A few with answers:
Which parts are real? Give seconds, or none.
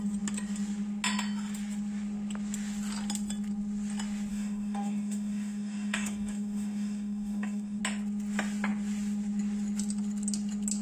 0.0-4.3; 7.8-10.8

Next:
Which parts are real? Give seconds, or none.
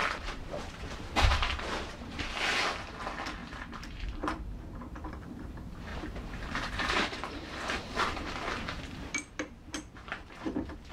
2.2-3.4; 5.1-5.9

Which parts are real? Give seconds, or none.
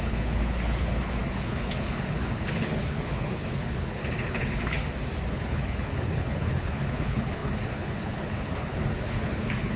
4.8-5.3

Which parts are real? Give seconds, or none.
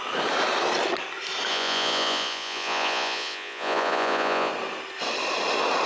0.0-1.5; 4.5-5.9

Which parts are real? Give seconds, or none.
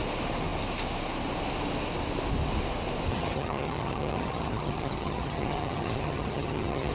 0.0-3.1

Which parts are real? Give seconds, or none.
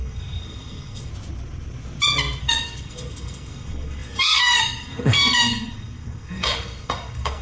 1.1-2.4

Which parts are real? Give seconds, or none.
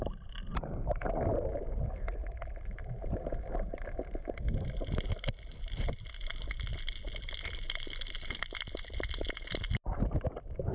0.0-10.7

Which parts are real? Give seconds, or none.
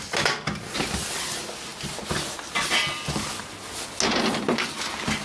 0.0-5.2